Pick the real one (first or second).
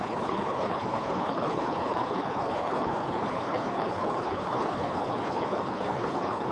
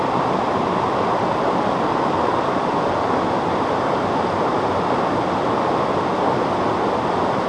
second